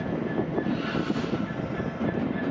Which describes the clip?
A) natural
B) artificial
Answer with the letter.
A